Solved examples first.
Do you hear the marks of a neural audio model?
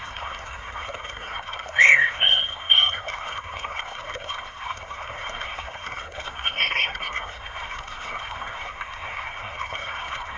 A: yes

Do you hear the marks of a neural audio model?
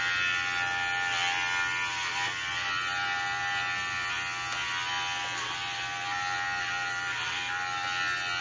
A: no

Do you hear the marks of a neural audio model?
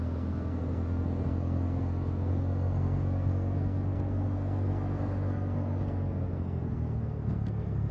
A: yes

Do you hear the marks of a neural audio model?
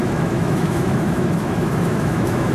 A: yes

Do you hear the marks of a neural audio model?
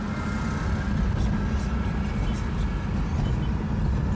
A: no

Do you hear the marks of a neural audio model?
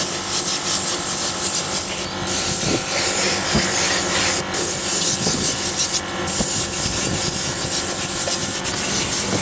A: no